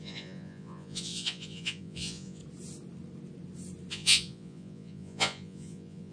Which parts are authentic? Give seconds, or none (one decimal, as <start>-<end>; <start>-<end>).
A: 2.4-3.9

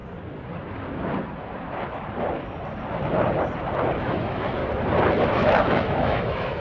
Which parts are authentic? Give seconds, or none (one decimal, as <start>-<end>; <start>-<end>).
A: 0.0-4.0; 4.6-5.2